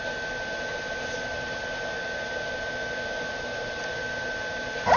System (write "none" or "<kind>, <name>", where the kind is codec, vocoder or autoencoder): none